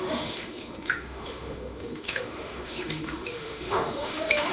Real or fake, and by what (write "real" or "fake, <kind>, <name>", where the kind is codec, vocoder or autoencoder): fake, autoencoder, DAC-VAE